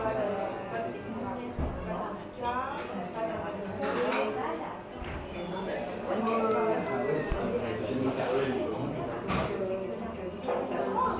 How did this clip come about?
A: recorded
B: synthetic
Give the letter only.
A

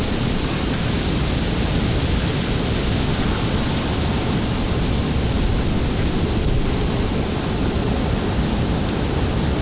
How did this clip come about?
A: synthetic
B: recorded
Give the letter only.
B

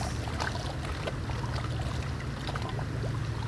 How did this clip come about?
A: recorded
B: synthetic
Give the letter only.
A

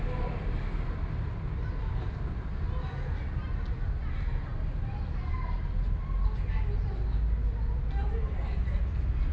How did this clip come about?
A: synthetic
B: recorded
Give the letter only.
B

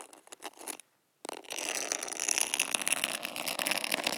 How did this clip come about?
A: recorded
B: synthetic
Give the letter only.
A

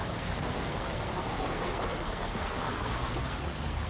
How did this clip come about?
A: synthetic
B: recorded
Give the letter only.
A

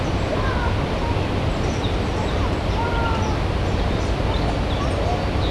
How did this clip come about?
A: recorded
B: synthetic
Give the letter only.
A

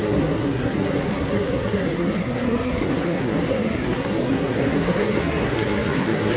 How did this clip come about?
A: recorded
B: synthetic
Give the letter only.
B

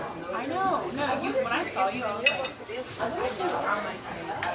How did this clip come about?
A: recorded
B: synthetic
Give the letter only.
A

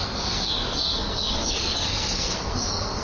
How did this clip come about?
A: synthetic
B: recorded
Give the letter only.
A